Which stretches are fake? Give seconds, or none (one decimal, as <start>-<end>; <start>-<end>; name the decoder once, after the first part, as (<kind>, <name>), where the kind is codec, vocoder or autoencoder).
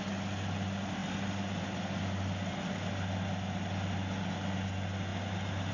none